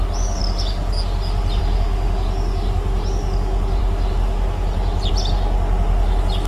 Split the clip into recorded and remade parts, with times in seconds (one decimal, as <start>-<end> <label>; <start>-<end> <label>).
0.0-6.5 recorded